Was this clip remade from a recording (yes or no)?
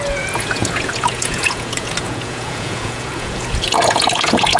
yes